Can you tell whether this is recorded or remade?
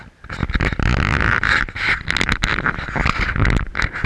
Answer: recorded